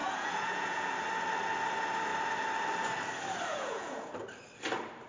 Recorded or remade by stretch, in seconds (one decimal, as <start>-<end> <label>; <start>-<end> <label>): 0.0-0.9 remade; 0.9-3.5 recorded; 3.5-4.1 remade; 4.1-5.1 recorded